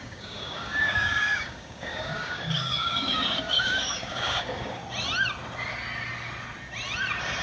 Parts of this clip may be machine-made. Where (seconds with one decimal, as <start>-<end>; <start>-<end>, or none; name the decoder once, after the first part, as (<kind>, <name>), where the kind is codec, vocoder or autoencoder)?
0.0-4.8 (codec, DAC)